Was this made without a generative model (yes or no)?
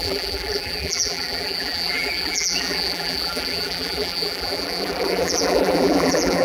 no